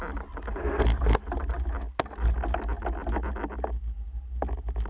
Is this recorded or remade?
recorded